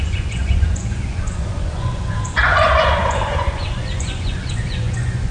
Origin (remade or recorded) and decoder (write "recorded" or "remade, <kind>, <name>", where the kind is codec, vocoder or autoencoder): remade, vocoder, Vocos